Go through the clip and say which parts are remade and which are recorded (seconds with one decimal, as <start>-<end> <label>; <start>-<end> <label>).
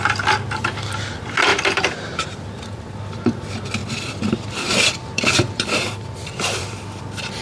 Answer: 0.0-1.5 recorded; 1.5-3.3 remade; 3.3-3.8 recorded; 3.8-7.0 remade; 7.0-7.4 recorded